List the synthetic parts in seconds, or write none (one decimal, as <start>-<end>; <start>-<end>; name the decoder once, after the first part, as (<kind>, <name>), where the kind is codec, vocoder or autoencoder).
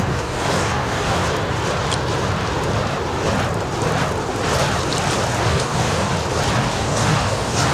0.0-1.2 (codec, DAC); 5.4-6.1; 6.6-7.7